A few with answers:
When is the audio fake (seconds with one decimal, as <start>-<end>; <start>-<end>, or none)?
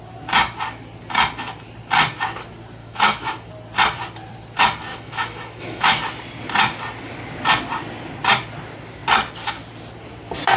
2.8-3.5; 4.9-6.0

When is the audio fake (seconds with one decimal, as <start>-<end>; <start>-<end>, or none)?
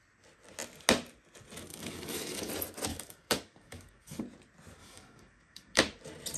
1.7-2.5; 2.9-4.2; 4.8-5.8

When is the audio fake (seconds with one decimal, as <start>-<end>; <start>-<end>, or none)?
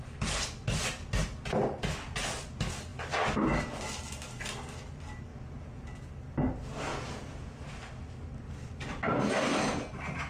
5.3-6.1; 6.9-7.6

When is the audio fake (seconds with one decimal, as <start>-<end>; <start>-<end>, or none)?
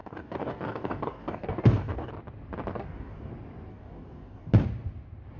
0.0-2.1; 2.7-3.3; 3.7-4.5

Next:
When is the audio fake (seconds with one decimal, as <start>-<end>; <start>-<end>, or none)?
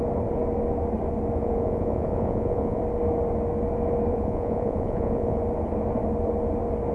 1.4-2.8; 4.1-5.4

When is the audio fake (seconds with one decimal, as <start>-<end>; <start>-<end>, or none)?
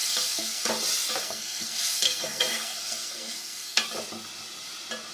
0.0-0.7; 1.2-3.8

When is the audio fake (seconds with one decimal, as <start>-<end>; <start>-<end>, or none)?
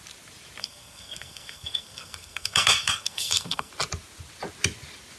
0.6-3.7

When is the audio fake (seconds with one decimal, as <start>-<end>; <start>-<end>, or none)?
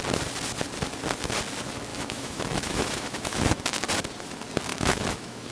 1.9-3.6; 4.7-5.5